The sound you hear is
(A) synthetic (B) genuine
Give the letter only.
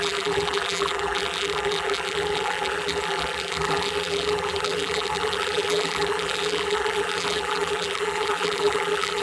A